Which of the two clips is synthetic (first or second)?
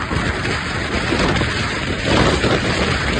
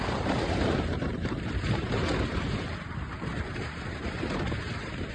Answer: second